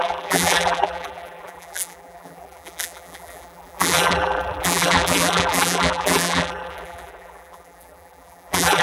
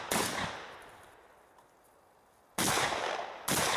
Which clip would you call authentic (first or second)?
second